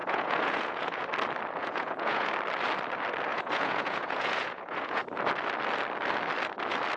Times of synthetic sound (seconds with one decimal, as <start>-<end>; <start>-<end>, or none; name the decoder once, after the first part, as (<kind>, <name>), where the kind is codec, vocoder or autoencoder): 0.0-1.1 (vocoder, Vocos); 1.6-2.3; 3.3-5.0